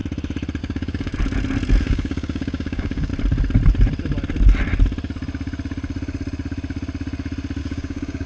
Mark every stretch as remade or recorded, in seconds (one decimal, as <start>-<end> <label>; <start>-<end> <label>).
0.0-0.6 recorded; 0.6-1.1 remade; 1.1-1.8 recorded; 1.8-3.1 remade; 3.1-7.6 recorded; 7.6-8.3 remade